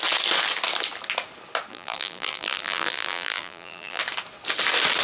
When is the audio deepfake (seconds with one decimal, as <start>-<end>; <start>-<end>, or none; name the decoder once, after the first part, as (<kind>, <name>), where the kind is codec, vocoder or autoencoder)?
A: 1.7-4.0 (vocoder, BigVGAN v2)